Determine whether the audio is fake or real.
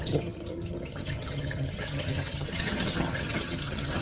fake